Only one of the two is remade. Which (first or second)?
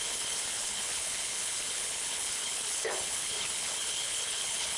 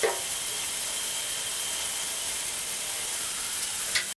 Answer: first